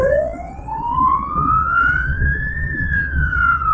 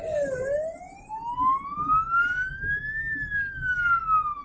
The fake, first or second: first